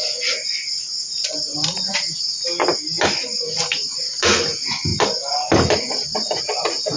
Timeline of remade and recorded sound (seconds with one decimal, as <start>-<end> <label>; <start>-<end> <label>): 0.0-7.0 recorded